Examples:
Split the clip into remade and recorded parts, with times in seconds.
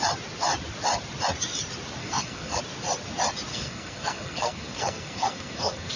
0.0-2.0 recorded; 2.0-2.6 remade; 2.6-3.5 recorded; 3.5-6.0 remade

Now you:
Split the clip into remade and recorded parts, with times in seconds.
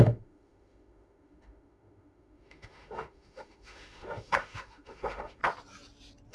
0.0-5.4 remade; 5.4-6.3 recorded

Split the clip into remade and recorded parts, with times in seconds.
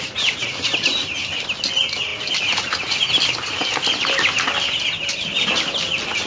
0.0-6.3 recorded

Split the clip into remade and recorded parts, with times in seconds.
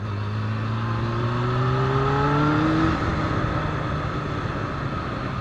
0.0-5.4 recorded